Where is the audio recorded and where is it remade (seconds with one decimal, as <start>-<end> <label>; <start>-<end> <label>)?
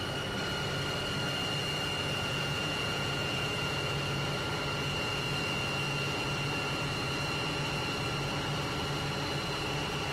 0.0-2.0 recorded; 2.0-4.3 remade; 4.3-4.7 recorded; 4.7-5.4 remade; 5.4-10.1 recorded